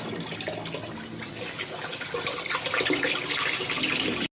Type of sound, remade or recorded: recorded